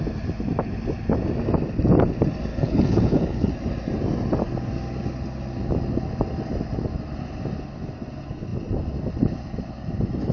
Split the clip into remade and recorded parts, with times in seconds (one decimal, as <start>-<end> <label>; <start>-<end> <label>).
0.0-2.5 recorded; 2.5-3.5 remade; 3.5-10.3 recorded